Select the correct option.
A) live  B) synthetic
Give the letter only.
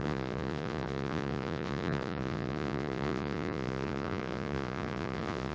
B